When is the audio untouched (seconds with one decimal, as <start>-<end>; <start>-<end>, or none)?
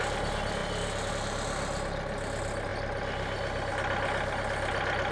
0.0-5.1